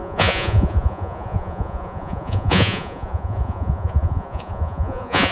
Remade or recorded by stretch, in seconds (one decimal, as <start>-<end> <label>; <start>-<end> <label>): 0.0-5.3 remade

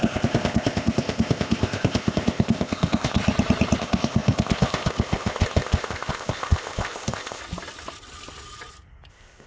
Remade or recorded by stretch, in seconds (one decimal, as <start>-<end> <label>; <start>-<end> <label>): 0.0-3.2 remade; 3.2-3.8 recorded; 3.8-7.4 remade; 7.4-9.1 recorded; 9.1-9.5 remade

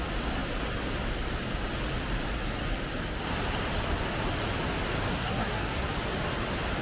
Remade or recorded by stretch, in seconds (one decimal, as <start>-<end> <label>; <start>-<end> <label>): 0.0-5.1 recorded; 5.1-5.8 remade; 5.8-6.8 recorded

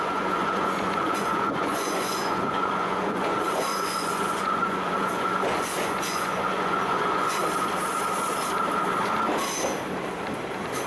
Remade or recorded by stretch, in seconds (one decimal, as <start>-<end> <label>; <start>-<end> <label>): 0.0-7.4 remade; 7.4-10.9 recorded